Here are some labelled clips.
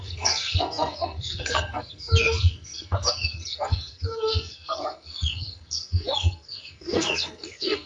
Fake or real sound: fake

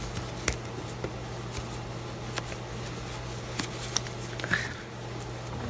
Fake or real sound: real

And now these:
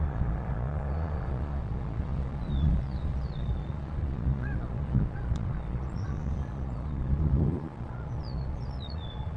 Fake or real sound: fake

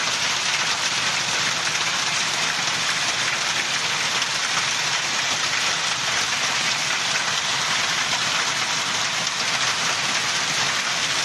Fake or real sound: real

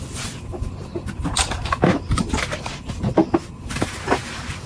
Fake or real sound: real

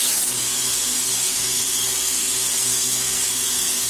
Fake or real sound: fake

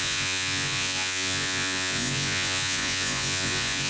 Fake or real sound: fake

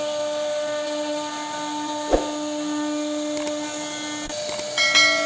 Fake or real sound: real